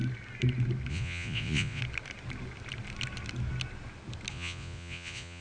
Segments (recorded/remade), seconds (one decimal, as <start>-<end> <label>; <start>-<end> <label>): 0.0-0.9 recorded; 0.9-1.8 remade; 1.8-4.3 recorded; 4.3-5.4 remade